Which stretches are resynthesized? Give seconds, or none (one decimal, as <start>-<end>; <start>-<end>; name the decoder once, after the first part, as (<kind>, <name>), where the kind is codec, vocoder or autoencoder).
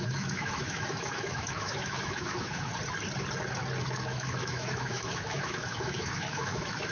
0.0-2.7 (autoencoder, DAC-VAE); 3.8-6.9